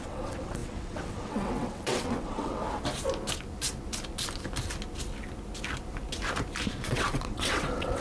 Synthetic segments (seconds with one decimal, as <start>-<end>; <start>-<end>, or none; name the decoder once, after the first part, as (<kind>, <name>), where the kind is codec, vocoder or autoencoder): 0.0-2.6 (vocoder, WaveNeXt); 6.8-8.0